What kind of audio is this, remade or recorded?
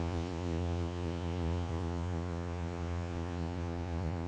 remade